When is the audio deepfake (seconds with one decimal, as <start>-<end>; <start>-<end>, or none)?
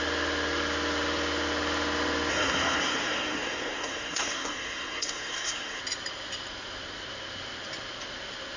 2.3-5.8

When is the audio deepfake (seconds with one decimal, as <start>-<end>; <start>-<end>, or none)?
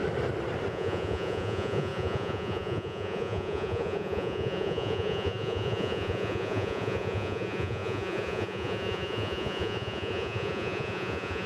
0.7-11.5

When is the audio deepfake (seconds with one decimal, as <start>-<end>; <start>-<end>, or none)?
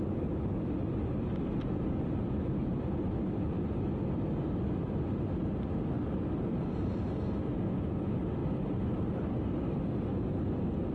none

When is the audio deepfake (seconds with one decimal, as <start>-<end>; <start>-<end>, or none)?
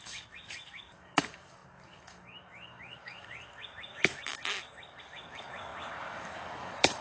0.0-7.0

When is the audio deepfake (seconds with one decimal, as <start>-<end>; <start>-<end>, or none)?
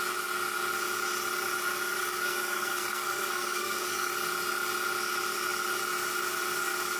2.0-4.1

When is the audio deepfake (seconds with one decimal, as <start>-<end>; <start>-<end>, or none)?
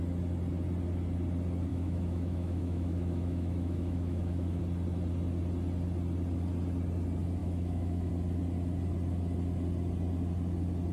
1.7-4.6; 7.4-8.1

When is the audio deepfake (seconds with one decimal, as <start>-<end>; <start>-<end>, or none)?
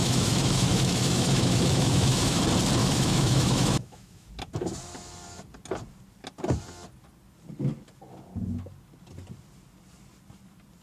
0.0-2.4; 2.8-4.3